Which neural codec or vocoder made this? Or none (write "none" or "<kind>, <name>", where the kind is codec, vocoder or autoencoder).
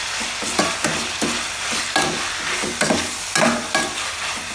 none